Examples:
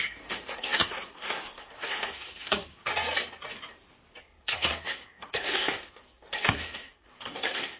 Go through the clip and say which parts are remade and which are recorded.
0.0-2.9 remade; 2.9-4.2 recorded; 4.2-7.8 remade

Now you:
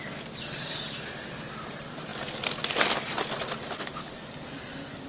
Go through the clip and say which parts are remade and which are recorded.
0.0-5.1 recorded

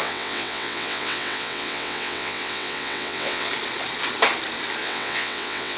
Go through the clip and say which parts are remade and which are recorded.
0.0-3.5 remade; 3.5-4.8 recorded; 4.8-5.8 remade

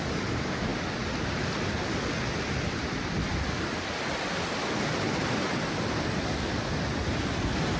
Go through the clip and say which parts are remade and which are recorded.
0.0-0.7 recorded; 0.7-5.4 remade; 5.4-7.8 recorded

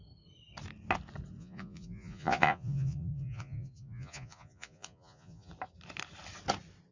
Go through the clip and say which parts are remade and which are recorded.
0.0-1.4 recorded; 1.4-5.5 remade; 5.5-6.9 recorded

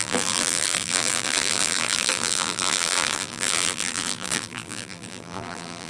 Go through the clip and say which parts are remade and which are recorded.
0.0-5.9 remade